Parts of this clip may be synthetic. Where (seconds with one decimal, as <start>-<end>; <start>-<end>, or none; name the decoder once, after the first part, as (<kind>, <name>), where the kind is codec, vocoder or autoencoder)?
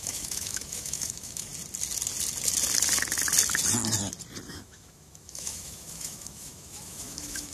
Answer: 0.0-1.5 (autoencoder, DAC-VAE); 4.5-7.5